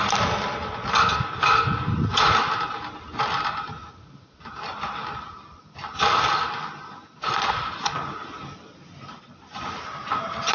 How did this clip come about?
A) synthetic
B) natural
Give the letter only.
B